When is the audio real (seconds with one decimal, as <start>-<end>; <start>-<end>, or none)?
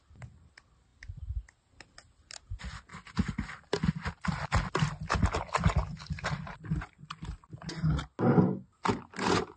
0.0-9.6